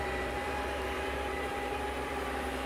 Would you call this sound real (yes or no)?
no